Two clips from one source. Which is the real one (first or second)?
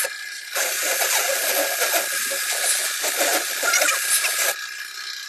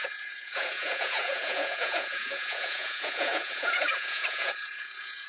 first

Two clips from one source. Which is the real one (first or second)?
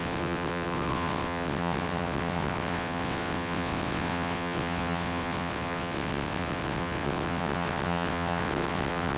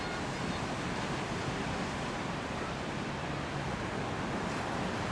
second